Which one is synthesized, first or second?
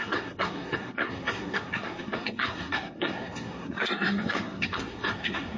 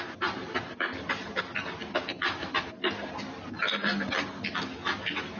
first